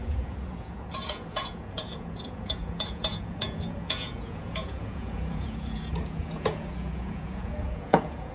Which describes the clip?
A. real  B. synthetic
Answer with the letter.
B